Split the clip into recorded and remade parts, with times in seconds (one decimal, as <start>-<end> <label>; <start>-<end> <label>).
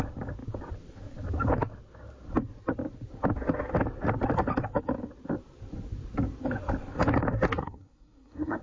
0.0-7.5 recorded; 7.5-8.6 remade